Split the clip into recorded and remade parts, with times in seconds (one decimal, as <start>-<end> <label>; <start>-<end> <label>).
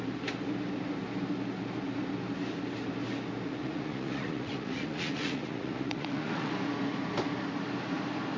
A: 0.0-3.6 recorded; 3.6-6.5 remade; 6.5-8.4 recorded